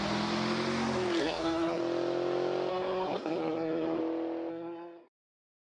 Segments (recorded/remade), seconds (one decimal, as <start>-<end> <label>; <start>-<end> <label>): 0.0-1.2 recorded; 1.2-1.8 remade; 1.8-2.7 recorded; 2.7-4.0 remade; 4.0-4.5 recorded; 4.5-5.6 remade